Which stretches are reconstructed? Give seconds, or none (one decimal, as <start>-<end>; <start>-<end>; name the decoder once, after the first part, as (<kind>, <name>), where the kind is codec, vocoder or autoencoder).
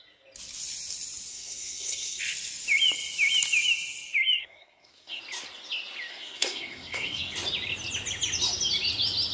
1.3-2.2 (codec, SNAC); 4.4-5.2; 6.1-7.3